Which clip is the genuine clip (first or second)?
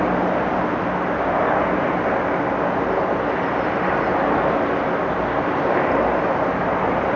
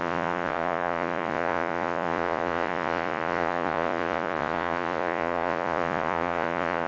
first